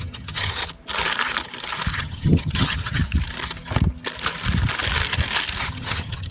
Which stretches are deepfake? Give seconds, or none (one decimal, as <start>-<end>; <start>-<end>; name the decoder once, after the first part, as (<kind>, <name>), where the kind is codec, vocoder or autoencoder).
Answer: 0.0-0.6 (vocoder, HiFi-GAN); 1.9-3.0; 5.6-6.3